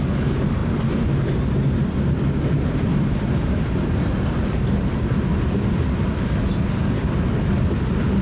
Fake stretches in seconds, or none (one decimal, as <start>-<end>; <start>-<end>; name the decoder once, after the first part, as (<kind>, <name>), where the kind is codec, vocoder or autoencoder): 2.9-5.7 (vocoder, BigVGAN v2)